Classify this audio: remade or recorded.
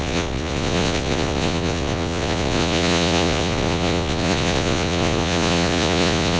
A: remade